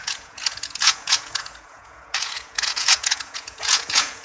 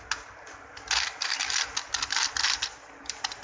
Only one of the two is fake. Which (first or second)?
first